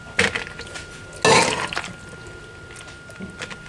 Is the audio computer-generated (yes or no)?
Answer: no